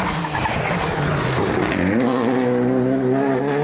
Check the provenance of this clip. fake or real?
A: real